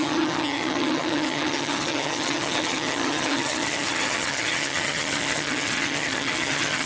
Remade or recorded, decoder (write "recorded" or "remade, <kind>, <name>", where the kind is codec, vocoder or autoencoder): remade, vocoder, HiFi-GAN